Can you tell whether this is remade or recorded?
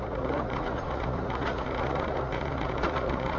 remade